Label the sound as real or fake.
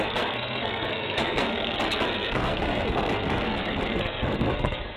fake